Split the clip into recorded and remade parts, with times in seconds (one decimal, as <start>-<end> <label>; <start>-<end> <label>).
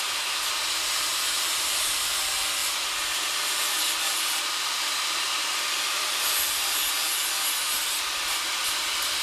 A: 0.0-1.1 recorded; 1.1-2.1 remade; 2.1-2.6 recorded; 2.6-6.9 remade; 6.9-9.2 recorded